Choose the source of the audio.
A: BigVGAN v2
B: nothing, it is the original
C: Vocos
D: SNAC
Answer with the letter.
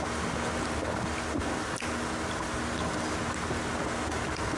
B